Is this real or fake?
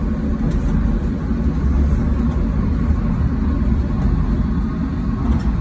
real